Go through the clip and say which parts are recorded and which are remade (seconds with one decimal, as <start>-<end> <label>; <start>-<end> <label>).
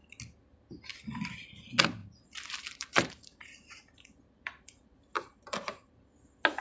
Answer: 0.0-2.0 recorded; 2.0-5.9 remade; 5.9-6.6 recorded